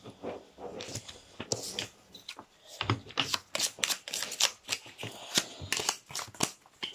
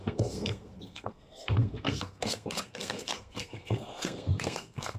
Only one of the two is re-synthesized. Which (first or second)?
second